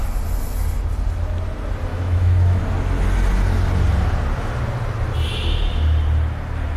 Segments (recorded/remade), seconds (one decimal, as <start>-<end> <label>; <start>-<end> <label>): 0.0-1.9 recorded; 1.9-2.6 remade; 2.6-6.8 recorded

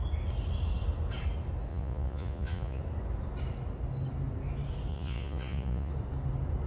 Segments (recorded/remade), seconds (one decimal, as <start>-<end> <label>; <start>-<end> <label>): 0.0-1.7 recorded; 1.7-2.8 remade; 2.8-4.9 recorded; 4.9-5.9 remade; 5.9-6.7 recorded

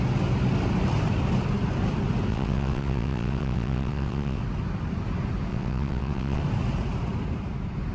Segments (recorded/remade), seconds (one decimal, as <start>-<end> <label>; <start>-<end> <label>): 0.0-2.3 recorded; 2.3-4.4 remade; 4.4-5.5 recorded; 5.5-6.4 remade; 6.4-7.9 recorded